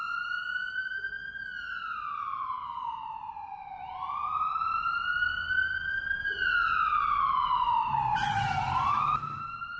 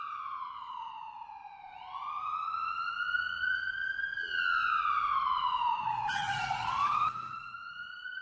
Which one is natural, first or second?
first